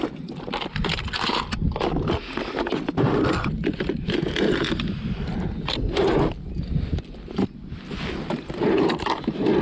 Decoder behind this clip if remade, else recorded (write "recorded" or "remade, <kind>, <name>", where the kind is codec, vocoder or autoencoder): recorded